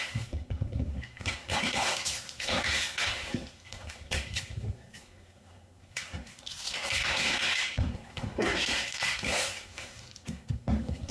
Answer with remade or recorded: remade